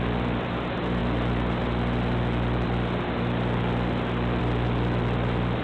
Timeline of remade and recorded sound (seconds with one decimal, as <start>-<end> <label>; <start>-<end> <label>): 0.0-5.6 recorded